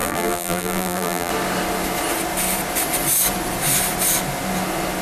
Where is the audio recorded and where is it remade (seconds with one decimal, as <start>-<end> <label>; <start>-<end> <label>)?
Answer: 0.0-1.3 remade; 1.3-5.0 recorded